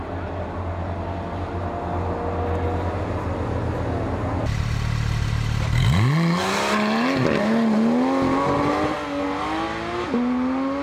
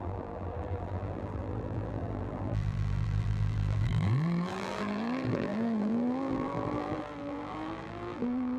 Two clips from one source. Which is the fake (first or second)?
second